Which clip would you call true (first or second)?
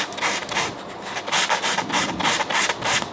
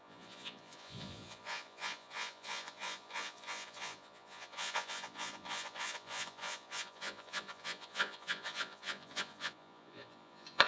first